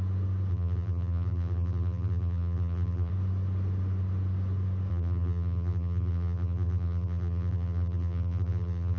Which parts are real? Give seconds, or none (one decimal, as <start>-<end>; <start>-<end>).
0.0-0.5; 3.1-4.9